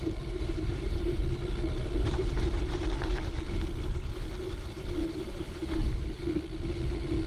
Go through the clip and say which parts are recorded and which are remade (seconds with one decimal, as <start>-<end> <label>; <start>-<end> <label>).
0.0-1.2 remade; 1.2-2.0 recorded; 2.0-2.8 remade; 2.8-5.0 recorded; 5.0-5.9 remade; 5.9-7.3 recorded